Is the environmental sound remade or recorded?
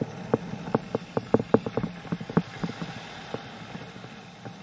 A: recorded